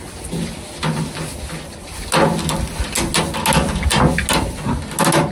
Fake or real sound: real